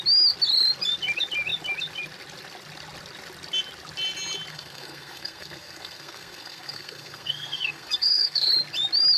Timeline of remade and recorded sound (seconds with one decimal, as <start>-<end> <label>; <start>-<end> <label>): 0.0-4.5 recorded; 4.5-8.5 remade; 8.5-9.2 recorded